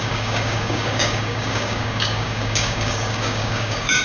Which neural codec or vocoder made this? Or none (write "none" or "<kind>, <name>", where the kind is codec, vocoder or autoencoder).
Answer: codec, DAC